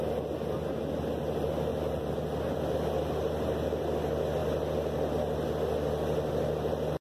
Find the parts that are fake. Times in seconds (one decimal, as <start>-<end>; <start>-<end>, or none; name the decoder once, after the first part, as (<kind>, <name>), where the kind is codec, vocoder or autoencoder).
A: 1.7-2.4 (vocoder, BigVGAN v2)

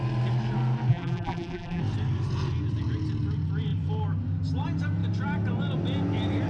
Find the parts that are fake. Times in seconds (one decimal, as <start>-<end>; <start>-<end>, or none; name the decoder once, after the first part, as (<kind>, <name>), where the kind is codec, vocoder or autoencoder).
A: 0.9-1.8 (vocoder, BigVGAN v2)

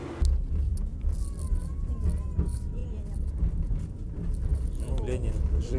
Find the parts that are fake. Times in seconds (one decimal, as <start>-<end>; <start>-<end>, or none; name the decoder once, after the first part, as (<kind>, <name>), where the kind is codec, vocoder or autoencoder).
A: 0.7-1.6 (vocoder, BigVGAN v2); 2.8-4.0; 4.5-5.8

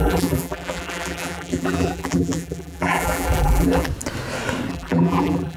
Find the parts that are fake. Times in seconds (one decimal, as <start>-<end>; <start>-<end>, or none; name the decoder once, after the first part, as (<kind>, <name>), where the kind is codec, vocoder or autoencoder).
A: 0.0-3.9 (vocoder, BigVGAN v2); 4.7-5.6

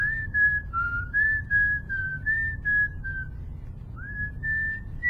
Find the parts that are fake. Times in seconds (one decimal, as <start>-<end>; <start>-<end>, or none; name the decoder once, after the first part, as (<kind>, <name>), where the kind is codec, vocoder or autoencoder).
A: 0.0-2.4 (vocoder, BigVGAN v2); 4.1-5.1

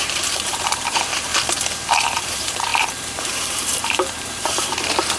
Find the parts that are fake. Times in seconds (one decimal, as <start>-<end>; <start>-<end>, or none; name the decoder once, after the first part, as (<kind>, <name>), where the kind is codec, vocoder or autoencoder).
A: 0.0-1.3 (vocoder, BigVGAN v2); 1.9-5.2